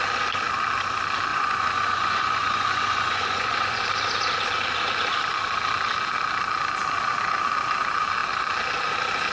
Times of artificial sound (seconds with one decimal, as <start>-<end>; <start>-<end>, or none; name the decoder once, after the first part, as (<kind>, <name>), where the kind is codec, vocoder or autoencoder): 1.3-3.8 (vocoder, Vocos)